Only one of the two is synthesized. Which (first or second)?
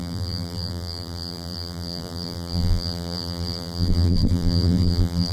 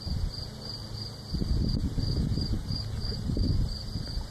first